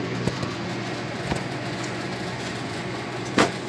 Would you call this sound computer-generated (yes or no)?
yes